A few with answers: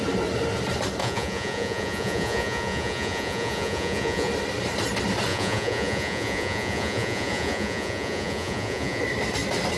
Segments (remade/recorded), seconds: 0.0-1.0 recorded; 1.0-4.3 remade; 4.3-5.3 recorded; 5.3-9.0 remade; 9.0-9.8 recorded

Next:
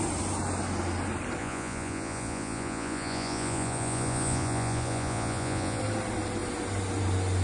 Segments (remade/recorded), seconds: 0.0-1.4 recorded; 1.4-5.8 remade; 5.8-7.4 recorded

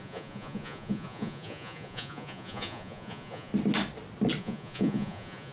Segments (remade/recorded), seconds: 0.0-3.5 remade; 3.5-4.4 recorded; 4.4-5.5 remade

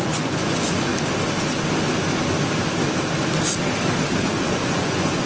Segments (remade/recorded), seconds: 0.0-0.9 remade; 0.9-4.1 recorded; 4.1-5.3 remade